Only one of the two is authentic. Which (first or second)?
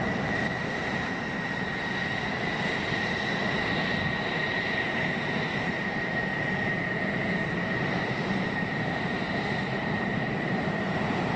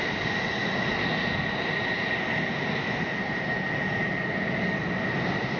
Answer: second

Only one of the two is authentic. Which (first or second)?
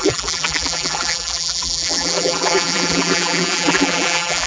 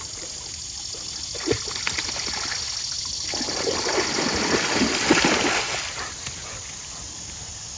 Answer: second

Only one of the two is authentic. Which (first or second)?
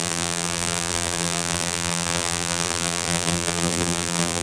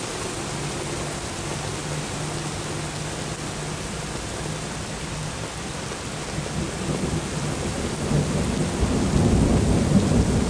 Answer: second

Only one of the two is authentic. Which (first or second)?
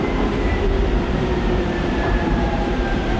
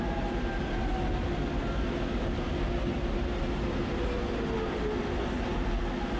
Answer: second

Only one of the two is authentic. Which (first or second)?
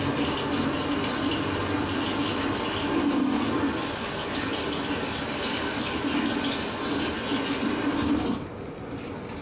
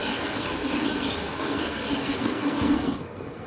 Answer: first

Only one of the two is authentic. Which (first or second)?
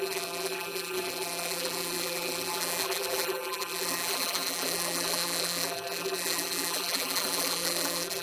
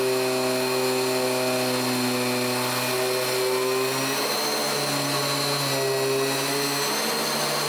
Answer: second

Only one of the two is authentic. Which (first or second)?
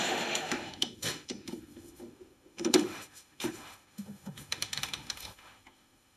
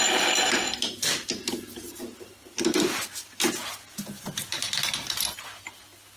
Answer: second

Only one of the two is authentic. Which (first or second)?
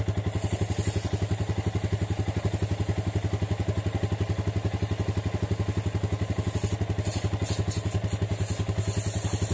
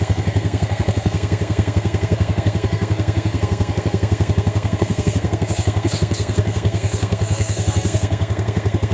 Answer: first